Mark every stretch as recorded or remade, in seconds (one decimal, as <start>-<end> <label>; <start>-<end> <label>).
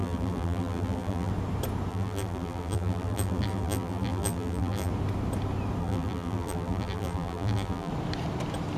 0.0-1.3 remade; 1.3-1.9 recorded; 1.9-4.9 remade; 4.9-5.8 recorded; 5.8-7.9 remade; 7.9-8.8 recorded